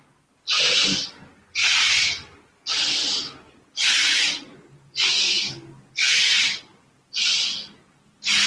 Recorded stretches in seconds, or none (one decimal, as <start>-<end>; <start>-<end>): 0.0-5.1; 5.9-8.5